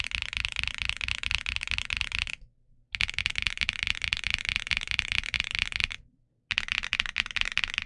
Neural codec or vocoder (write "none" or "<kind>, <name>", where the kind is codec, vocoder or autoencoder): none